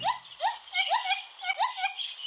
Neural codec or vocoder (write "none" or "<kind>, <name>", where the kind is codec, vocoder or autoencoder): none